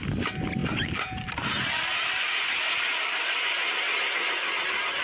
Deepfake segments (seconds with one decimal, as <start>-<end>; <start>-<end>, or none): none